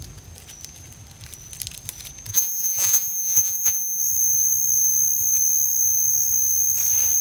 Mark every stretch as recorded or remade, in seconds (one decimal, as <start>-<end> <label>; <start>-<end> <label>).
0.0-2.3 recorded; 2.3-4.0 remade; 4.0-7.2 recorded